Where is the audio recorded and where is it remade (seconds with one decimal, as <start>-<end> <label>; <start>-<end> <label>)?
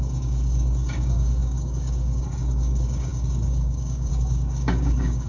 0.0-5.3 remade